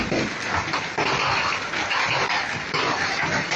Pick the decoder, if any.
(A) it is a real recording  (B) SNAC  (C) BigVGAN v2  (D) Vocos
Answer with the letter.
A